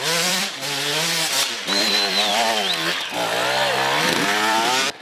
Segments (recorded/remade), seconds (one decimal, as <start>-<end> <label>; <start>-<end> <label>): 0.0-0.9 remade; 0.9-1.5 recorded; 1.5-5.0 remade